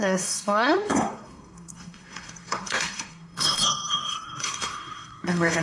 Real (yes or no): no